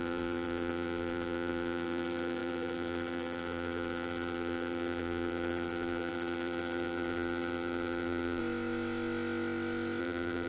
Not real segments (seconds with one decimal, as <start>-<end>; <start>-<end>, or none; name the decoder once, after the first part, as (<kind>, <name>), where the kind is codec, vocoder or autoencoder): 0.0-8.4 (vocoder, BigVGAN v2); 10.0-10.5

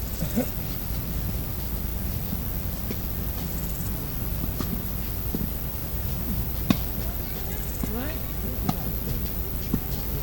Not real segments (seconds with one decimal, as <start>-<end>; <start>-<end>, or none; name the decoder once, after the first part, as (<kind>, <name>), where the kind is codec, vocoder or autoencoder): 5.8-6.5 (vocoder, BigVGAN v2)

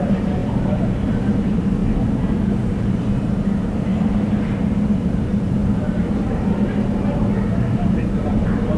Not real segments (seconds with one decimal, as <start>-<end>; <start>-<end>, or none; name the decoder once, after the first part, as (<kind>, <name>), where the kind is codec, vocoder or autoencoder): 0.0-0.4 (vocoder, BigVGAN v2); 1.1-8.8

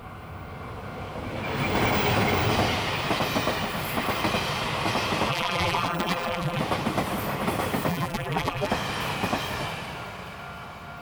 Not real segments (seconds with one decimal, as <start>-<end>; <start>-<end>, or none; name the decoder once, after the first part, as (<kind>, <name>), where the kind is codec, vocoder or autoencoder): 5.3-6.6 (vocoder, BigVGAN v2); 7.9-8.7

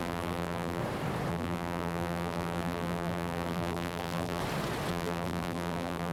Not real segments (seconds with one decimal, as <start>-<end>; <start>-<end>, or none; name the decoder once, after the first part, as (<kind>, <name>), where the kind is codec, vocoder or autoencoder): 0.0-0.8 (vocoder, BigVGAN v2); 1.3-4.4; 4.9-6.1

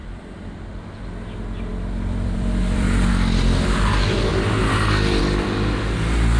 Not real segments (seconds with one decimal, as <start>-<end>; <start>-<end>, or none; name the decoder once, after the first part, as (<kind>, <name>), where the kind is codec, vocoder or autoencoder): 0.0-0.8 (vocoder, BigVGAN v2); 1.7-3.1

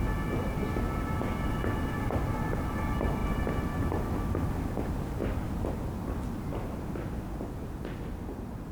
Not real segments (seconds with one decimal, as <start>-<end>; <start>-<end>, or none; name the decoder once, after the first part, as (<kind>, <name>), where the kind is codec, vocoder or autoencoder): 5.2-5.7 (vocoder, BigVGAN v2)